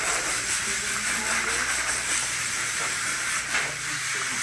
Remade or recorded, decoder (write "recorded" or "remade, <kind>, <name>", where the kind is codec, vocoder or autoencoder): remade, vocoder, BigVGAN v2